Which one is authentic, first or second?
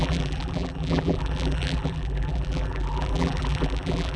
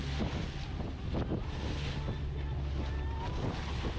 second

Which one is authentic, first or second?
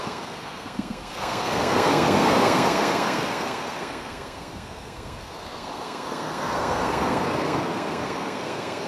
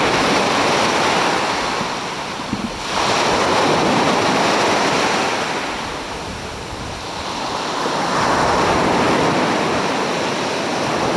second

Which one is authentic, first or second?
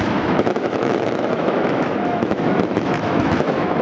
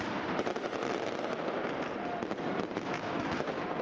second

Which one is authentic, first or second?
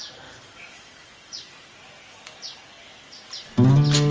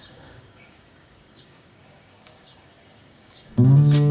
first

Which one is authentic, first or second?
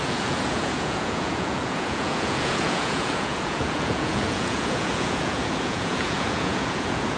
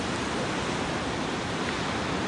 second